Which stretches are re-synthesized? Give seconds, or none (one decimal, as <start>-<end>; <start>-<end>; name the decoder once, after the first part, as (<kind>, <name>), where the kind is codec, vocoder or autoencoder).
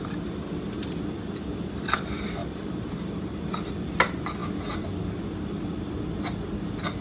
none